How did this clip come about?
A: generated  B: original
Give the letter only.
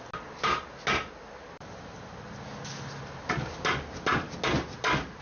B